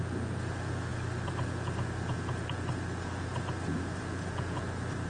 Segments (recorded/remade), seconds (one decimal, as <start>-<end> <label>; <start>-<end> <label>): 0.0-5.1 recorded